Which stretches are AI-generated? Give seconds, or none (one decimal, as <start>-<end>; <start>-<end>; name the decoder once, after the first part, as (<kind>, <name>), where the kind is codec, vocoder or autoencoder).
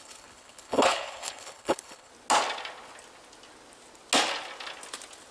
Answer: 0.0-2.1 (codec, HILCodec)